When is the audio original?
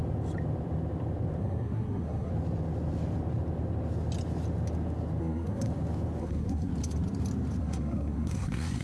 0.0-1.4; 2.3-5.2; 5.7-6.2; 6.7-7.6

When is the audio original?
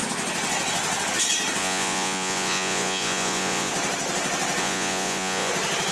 0.0-1.6; 3.7-4.6; 5.5-5.9